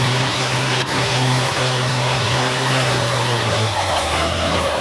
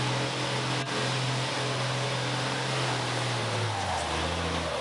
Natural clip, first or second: second